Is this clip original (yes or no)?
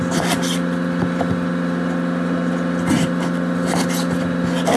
yes